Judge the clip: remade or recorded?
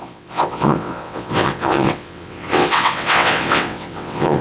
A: remade